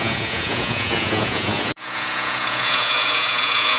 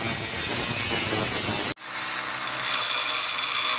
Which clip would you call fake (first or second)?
first